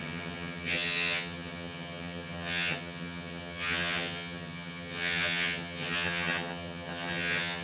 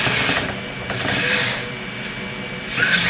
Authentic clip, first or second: second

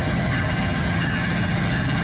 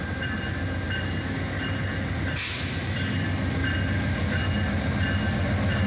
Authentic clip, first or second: second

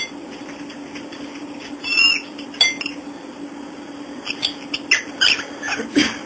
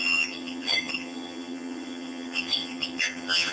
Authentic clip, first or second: first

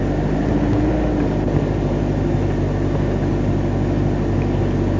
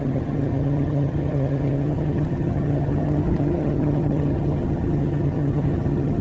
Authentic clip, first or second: first